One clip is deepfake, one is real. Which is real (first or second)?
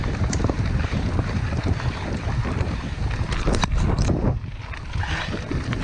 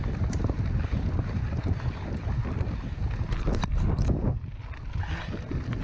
second